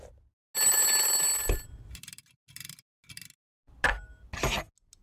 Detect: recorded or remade recorded